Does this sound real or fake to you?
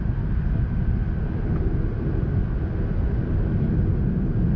real